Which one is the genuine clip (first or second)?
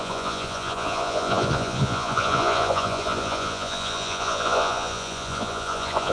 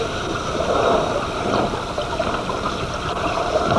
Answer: second